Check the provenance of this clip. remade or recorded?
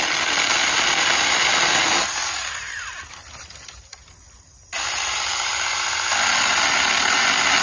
recorded